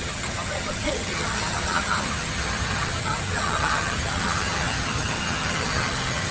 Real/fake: fake